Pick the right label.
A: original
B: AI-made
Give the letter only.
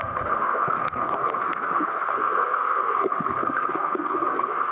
B